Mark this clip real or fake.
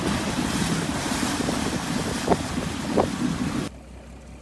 real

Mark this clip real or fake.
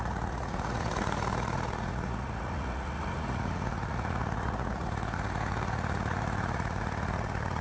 fake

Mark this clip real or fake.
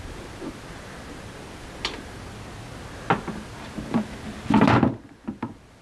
real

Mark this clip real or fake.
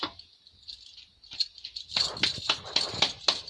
real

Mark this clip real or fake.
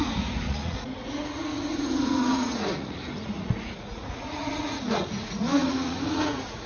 fake